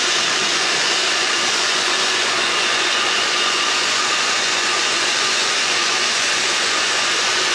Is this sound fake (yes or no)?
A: yes